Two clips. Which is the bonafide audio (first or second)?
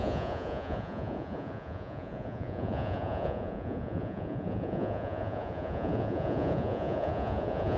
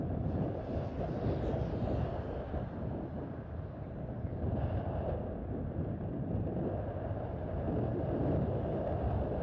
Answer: second